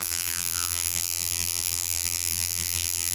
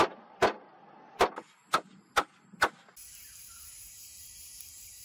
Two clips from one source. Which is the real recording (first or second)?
second